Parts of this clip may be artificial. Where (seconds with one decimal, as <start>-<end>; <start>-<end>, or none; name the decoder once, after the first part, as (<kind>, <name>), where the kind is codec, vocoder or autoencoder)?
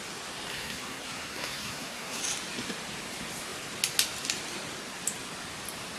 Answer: 0.5-2.2 (codec, SNAC)